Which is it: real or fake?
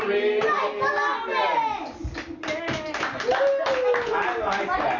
real